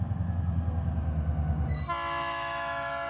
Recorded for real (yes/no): yes